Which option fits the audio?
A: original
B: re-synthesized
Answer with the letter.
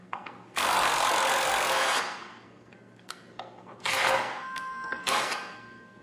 B